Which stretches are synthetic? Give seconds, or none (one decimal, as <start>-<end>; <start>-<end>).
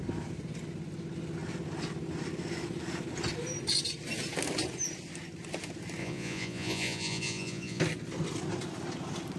6.0-7.8